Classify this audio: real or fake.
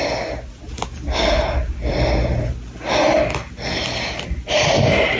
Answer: real